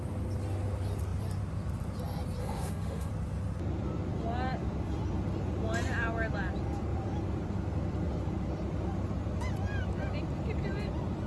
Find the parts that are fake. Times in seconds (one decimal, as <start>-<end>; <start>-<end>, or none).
2.4-3.1